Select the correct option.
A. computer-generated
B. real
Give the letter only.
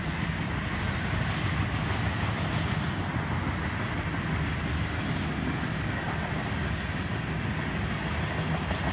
B